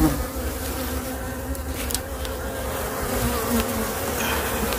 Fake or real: real